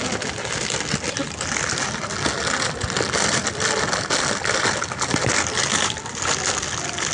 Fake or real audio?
real